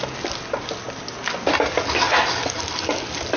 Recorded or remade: recorded